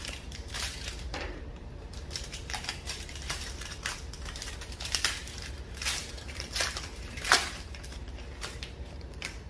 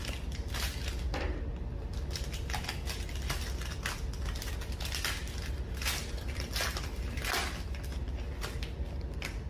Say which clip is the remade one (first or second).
first